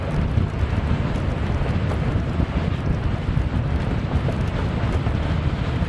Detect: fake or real real